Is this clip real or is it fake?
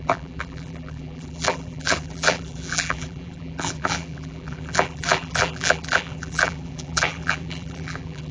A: fake